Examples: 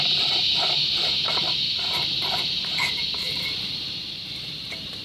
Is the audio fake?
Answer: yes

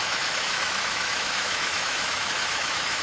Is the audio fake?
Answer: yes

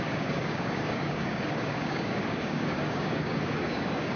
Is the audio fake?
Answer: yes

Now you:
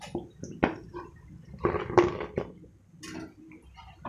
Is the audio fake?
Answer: no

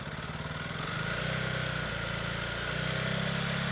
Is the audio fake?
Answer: no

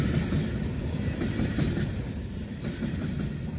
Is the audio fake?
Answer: no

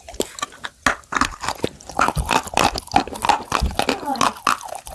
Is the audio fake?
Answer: no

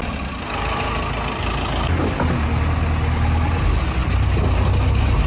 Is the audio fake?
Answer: no